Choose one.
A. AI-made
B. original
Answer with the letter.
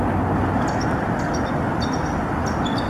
B